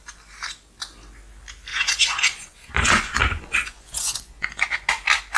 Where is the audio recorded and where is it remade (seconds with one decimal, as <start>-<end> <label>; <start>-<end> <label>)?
0.0-1.7 recorded; 1.7-4.9 remade; 4.9-5.4 recorded